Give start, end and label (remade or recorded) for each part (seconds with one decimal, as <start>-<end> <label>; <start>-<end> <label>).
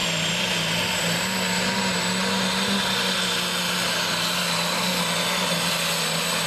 0.0-4.4 recorded; 4.4-5.0 remade; 5.0-6.5 recorded